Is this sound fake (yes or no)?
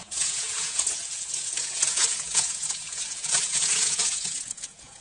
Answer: yes